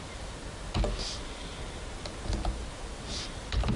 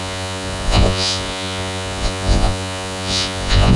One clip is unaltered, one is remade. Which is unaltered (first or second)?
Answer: first